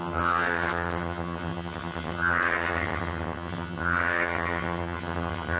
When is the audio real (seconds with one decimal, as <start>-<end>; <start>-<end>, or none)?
none